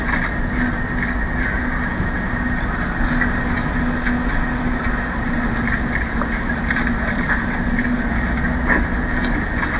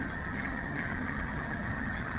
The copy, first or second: second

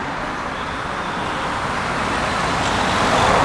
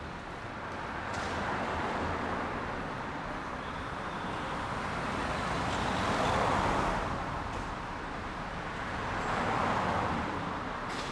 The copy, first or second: second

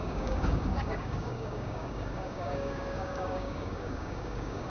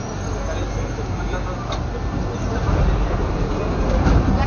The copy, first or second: first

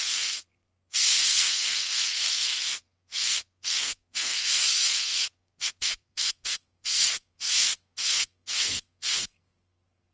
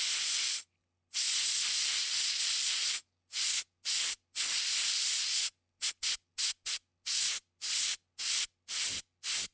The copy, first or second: first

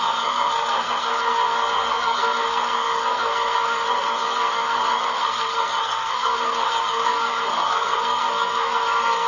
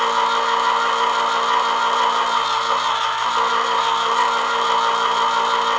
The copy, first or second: first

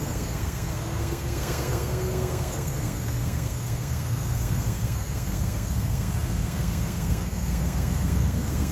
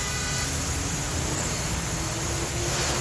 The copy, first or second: first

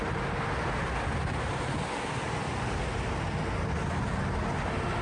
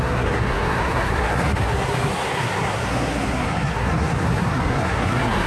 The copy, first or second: second